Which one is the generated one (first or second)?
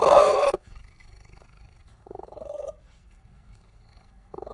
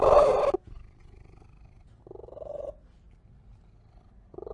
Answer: first